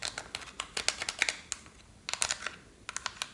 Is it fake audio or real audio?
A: real